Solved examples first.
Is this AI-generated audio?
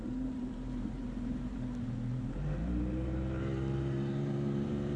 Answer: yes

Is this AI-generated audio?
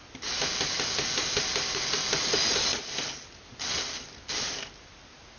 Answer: no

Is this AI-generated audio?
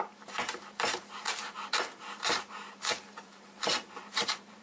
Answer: yes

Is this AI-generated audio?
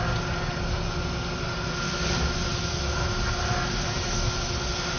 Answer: no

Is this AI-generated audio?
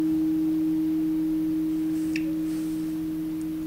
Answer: no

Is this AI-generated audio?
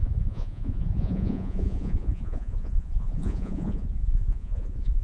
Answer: yes